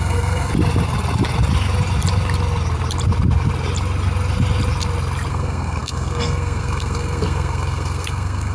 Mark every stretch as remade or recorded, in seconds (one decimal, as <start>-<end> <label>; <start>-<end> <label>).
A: 0.0-0.5 remade; 0.5-5.3 recorded; 5.3-8.5 remade